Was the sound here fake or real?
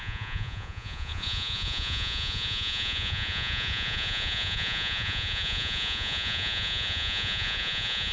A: fake